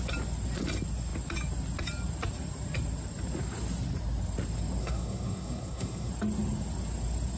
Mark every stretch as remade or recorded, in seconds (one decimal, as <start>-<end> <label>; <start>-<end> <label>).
0.0-4.8 recorded; 4.8-6.1 remade; 6.1-7.4 recorded